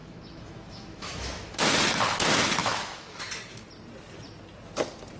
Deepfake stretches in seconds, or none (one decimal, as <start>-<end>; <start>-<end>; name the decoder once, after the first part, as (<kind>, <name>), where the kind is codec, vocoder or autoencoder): 0.0-1.6 (autoencoder, DAC-VAE); 2.6-3.2